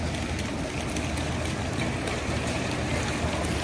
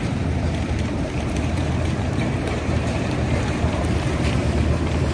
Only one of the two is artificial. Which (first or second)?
second